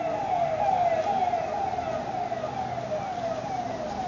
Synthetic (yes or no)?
no